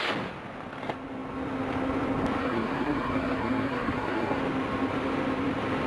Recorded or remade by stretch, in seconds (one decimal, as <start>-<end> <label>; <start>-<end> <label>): 0.0-2.4 recorded; 2.4-4.4 remade; 4.4-5.9 recorded